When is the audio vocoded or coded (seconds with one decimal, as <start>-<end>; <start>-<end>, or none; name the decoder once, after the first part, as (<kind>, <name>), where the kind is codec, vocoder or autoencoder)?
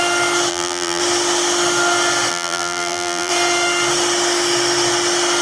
0.5-1.0 (vocoder, BigVGAN v2); 2.3-3.3